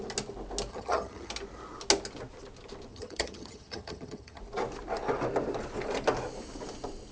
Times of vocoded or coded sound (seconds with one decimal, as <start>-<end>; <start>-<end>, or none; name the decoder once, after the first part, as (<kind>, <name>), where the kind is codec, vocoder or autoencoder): 0.7-1.3 (vocoder, HiFi-GAN); 2.9-4.4